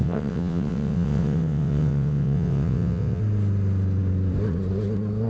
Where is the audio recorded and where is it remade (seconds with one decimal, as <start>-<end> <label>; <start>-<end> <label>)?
0.0-3.2 remade; 3.2-5.3 recorded